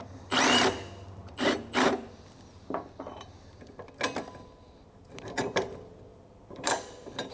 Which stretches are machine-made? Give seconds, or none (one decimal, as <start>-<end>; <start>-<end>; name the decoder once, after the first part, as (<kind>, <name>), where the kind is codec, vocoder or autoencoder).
6.1-7.3 (vocoder, BigVGAN v2)

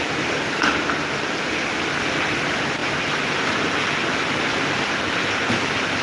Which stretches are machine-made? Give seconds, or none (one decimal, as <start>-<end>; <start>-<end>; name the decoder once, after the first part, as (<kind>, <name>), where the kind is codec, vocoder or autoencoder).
none

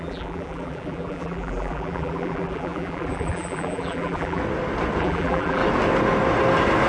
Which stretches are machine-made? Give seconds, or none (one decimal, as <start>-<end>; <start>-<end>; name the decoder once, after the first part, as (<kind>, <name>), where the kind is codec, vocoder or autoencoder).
0.0-4.4 (vocoder, BigVGAN v2); 5.0-5.6

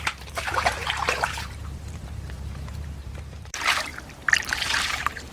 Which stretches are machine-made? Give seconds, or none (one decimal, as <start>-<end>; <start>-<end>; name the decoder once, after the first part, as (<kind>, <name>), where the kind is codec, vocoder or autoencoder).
0.0-3.9 (vocoder, BigVGAN v2); 4.5-5.3

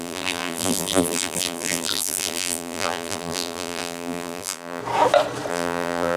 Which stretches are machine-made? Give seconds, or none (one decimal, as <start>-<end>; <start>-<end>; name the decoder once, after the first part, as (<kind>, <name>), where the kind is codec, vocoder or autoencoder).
0.0-4.8 (vocoder, BigVGAN v2); 5.5-6.2